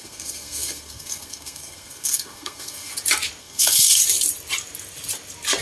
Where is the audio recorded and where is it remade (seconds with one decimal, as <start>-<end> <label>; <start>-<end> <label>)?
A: 0.0-2.9 remade; 2.9-3.4 recorded; 3.4-4.0 remade; 4.0-5.6 recorded